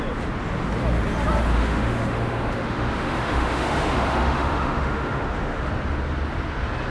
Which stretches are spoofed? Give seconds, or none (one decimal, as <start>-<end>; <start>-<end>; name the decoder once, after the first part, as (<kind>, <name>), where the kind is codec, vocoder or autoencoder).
1.5-5.6 (autoencoder, DAC-VAE)